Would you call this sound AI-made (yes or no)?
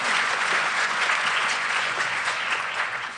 yes